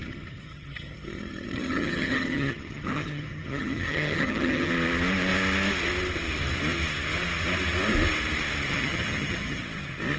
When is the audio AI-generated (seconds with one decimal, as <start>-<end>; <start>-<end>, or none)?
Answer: 0.0-4.7; 8.7-9.6